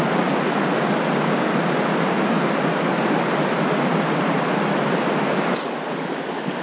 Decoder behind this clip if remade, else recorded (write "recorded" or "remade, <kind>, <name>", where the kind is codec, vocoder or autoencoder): recorded